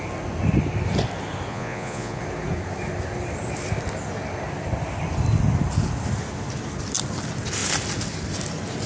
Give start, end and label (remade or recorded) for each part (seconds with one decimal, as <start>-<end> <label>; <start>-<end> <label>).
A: 0.0-1.5 recorded; 1.5-2.2 remade; 2.2-8.9 recorded

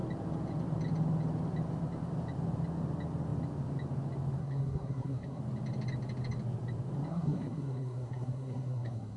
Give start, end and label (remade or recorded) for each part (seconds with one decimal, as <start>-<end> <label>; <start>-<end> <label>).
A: 0.0-4.4 recorded; 4.4-5.4 remade; 5.4-7.1 recorded; 7.1-9.2 remade

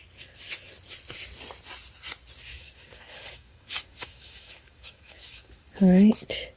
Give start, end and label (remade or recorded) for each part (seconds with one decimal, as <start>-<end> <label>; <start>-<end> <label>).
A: 0.0-2.5 recorded; 2.5-6.1 remade; 6.1-6.6 recorded

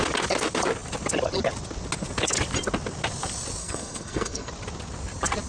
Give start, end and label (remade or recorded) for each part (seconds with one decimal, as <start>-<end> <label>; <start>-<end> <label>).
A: 0.0-3.6 recorded; 3.6-4.5 remade; 4.5-5.5 recorded

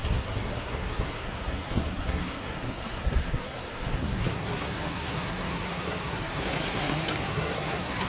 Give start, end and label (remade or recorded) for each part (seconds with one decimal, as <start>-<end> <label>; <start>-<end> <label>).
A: 0.0-8.1 remade